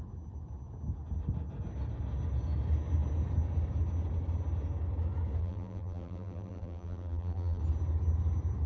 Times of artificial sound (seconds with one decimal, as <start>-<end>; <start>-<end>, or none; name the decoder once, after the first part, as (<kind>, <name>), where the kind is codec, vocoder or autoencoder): 5.4-7.6 (vocoder, BigVGAN v2)